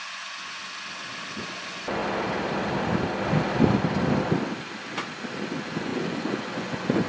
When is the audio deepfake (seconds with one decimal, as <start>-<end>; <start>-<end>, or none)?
0.0-0.6; 1.4-2.0; 5.5-7.1